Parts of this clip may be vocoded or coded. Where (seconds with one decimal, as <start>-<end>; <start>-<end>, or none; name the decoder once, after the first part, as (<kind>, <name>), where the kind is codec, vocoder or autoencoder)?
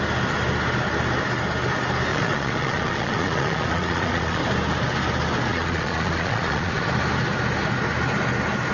2.1-4.4 (vocoder, Vocos); 5.5-6.9